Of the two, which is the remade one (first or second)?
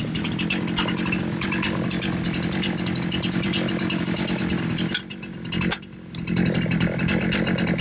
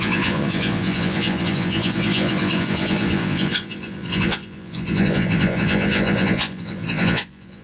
second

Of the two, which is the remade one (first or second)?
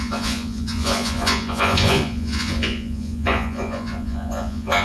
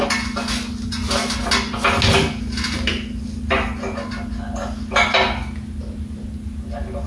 first